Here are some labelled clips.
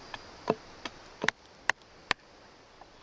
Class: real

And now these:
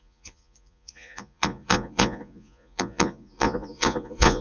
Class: fake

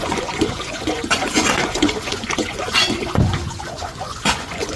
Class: fake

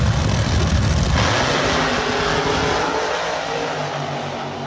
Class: real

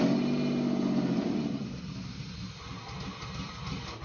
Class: real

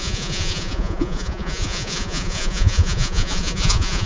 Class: fake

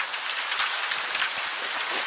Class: real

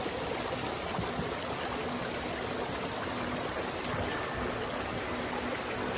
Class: real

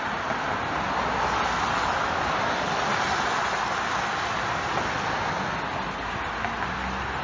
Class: real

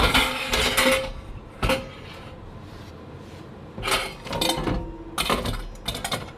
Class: real